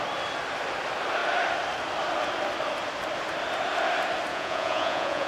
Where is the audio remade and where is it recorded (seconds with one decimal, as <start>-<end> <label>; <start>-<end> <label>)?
0.0-4.3 recorded; 4.3-5.3 remade